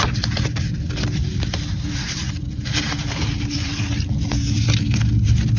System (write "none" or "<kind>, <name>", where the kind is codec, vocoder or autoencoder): vocoder, BigVGAN v2